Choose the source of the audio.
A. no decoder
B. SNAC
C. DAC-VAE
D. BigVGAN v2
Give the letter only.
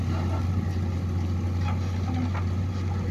A